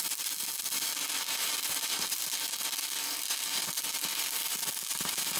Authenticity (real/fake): real